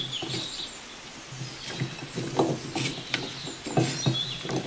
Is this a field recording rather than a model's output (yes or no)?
yes